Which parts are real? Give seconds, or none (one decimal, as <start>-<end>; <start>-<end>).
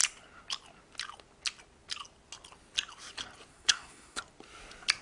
0.0-3.5; 4.2-5.0